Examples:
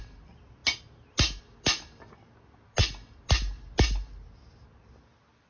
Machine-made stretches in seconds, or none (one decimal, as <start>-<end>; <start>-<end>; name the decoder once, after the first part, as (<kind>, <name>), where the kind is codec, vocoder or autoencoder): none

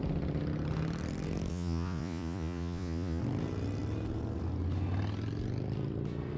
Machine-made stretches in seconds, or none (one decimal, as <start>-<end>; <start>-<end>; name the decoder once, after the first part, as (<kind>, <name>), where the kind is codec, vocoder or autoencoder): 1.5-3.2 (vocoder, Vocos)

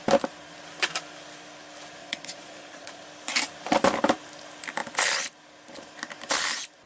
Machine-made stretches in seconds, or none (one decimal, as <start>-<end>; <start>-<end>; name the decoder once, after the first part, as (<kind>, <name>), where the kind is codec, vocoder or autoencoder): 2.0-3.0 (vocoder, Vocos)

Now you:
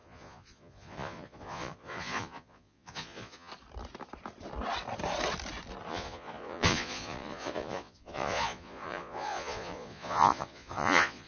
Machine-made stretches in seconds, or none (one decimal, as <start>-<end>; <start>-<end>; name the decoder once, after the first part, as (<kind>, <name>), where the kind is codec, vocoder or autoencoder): 0.0-3.5 (vocoder, Vocos); 5.9-11.3

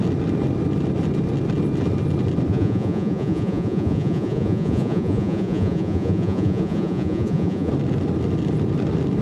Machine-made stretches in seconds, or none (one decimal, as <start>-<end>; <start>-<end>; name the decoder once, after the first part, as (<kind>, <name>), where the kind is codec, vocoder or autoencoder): 2.5-7.7 (vocoder, Vocos)

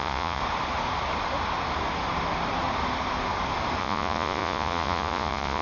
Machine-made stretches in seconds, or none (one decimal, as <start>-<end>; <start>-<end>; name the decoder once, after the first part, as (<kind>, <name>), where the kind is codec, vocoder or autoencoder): 0.0-0.4 (vocoder, Vocos); 3.8-5.6

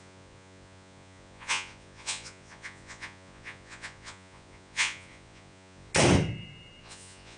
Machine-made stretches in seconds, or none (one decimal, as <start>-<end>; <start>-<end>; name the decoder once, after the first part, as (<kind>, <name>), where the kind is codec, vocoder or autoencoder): 0.0-5.9 (vocoder, Vocos); 6.8-7.4

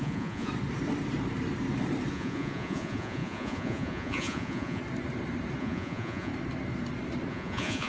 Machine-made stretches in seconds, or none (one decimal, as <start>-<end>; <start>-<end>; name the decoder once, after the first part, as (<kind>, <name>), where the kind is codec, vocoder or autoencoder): 0.0-0.5 (vocoder, Vocos); 2.1-4.8; 5.6-6.3; 7.3-7.9